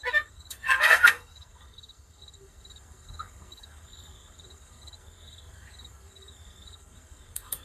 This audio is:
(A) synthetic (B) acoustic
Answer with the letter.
A